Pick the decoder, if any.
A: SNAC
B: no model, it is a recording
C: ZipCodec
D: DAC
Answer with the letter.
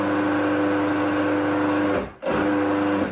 B